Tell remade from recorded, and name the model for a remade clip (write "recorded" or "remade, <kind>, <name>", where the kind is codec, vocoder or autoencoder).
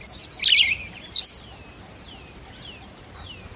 recorded